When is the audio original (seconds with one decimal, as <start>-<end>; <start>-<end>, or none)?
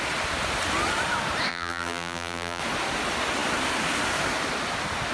0.0-1.5; 2.6-5.1